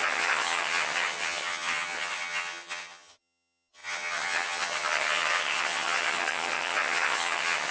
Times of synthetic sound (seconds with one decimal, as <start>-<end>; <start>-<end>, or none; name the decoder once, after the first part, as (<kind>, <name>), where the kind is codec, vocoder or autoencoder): 0.0-7.7 (vocoder, HiFi-GAN)